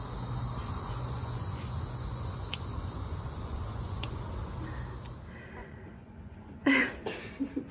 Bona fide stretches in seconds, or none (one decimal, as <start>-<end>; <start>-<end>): 0.0-0.6; 4.3-5.6; 6.9-7.7